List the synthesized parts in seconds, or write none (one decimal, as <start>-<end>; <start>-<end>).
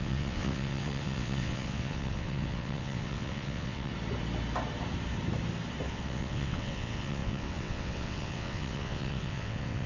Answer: 0.0-3.9; 5.9-9.9